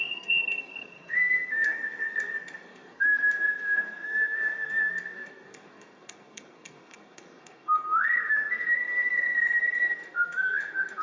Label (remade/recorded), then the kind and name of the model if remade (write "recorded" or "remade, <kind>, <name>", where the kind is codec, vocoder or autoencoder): remade, codec, SNAC